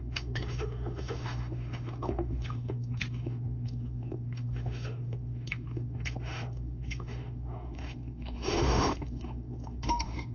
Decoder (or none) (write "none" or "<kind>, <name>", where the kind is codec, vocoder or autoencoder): autoencoder, DAC-VAE